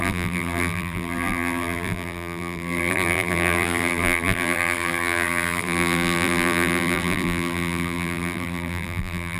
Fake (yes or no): yes